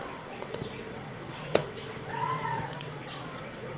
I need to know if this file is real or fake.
fake